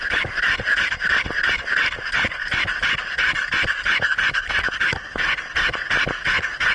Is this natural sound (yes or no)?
yes